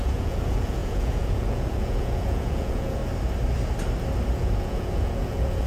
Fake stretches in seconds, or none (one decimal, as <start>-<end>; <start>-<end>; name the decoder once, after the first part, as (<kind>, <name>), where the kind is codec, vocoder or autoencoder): 0.0-3.0 (vocoder, Vocos); 4.3-5.7